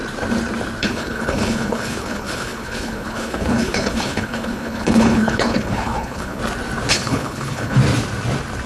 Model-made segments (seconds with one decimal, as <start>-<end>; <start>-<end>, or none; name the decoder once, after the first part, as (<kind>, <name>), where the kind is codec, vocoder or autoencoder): 0.8-6.4 (codec, HILCodec); 6.9-7.8